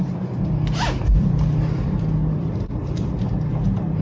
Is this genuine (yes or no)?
no